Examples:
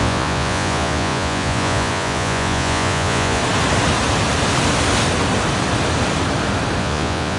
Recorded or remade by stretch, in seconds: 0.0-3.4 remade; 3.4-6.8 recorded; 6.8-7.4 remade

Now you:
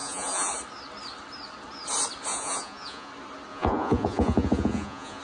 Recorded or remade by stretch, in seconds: 0.0-0.5 remade; 0.5-2.3 recorded; 2.3-3.1 remade; 3.1-3.5 recorded; 3.5-5.2 remade

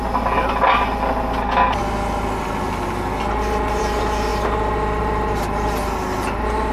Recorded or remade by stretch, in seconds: 0.0-6.7 recorded